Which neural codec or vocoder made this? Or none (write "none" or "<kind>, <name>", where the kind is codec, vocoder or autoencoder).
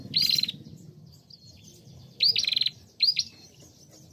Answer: none